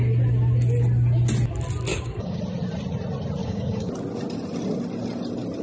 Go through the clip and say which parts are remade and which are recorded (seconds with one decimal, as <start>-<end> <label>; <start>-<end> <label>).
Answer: 0.0-1.9 recorded; 1.9-2.4 remade; 2.4-3.4 recorded; 3.4-3.9 remade; 3.9-5.6 recorded